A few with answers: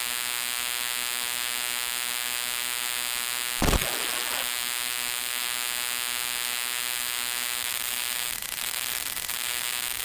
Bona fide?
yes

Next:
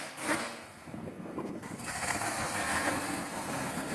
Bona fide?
no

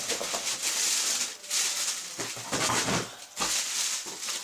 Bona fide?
yes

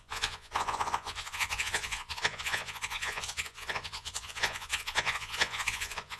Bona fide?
no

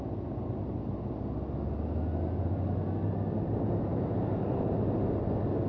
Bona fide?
yes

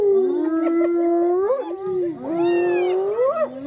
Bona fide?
yes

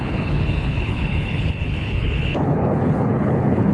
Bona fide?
no